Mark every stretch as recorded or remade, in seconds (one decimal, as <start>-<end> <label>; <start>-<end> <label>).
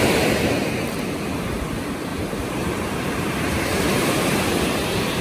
0.0-2.1 recorded; 2.1-5.2 remade